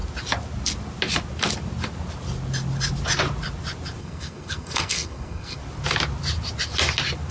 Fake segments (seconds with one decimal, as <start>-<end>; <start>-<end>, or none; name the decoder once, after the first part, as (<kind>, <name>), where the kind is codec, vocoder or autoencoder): 4.0-5.6 (codec, SNAC)